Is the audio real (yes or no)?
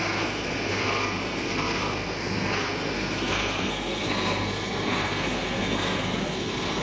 no